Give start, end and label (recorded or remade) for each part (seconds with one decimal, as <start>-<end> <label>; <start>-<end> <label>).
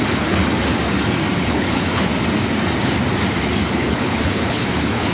0.0-0.4 remade; 0.4-1.4 recorded; 1.4-2.1 remade; 2.1-3.7 recorded; 3.7-5.1 remade